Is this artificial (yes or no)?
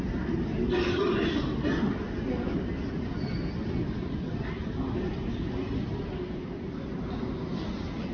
no